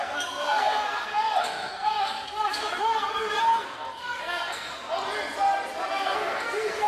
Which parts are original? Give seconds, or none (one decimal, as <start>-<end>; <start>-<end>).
4.8-5.9